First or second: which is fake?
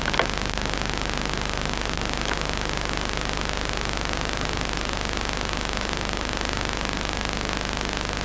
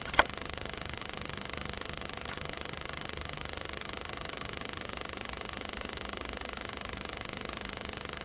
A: second